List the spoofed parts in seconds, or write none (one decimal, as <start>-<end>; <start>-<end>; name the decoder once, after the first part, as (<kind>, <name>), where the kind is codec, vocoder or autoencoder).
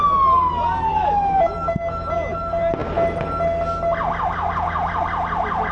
0.9-1.8 (autoencoder, DAC-VAE)